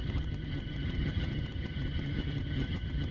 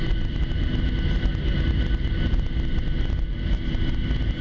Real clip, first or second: second